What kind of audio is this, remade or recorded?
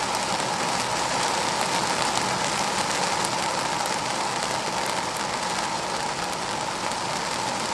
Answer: recorded